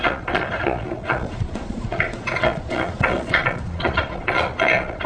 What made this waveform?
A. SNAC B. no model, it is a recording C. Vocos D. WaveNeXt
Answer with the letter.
C